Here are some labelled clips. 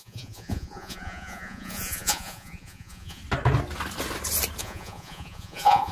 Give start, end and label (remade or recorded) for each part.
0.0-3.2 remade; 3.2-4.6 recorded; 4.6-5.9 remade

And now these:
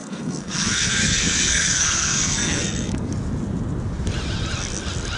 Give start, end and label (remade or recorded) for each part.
0.0-3.1 remade; 3.1-5.2 recorded

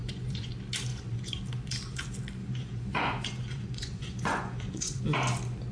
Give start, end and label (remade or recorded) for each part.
0.0-0.5 remade; 0.5-0.9 recorded; 0.9-1.4 remade; 1.4-2.4 recorded; 2.4-5.0 remade; 5.0-5.7 recorded

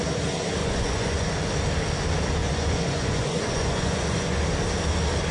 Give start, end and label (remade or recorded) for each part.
0.0-0.6 recorded; 0.6-1.3 remade; 1.3-2.4 recorded; 2.4-4.4 remade; 4.4-5.3 recorded